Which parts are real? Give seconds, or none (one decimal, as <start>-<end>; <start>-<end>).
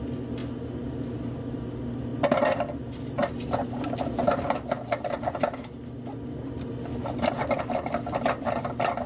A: 0.0-9.1